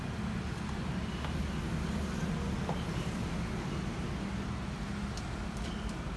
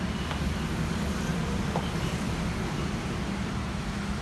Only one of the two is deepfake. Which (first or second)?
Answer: second